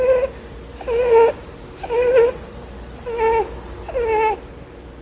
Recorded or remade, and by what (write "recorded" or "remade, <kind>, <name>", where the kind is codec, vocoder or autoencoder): recorded